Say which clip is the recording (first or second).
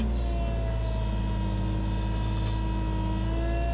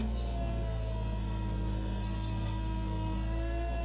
first